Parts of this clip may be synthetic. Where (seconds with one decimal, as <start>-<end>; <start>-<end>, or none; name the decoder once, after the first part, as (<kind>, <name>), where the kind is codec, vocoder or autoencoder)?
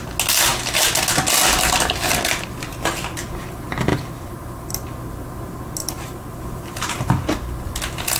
3.9-4.7 (vocoder, BigVGAN v2); 5.8-6.4